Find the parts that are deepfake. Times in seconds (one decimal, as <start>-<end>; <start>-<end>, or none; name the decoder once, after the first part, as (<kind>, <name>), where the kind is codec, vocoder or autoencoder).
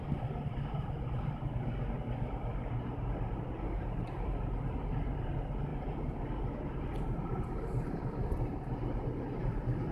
none